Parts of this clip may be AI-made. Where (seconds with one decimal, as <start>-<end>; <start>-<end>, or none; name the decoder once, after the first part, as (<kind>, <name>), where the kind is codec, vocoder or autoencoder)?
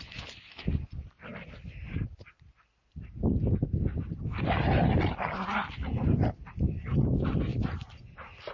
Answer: none